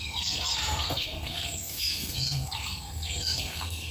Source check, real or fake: fake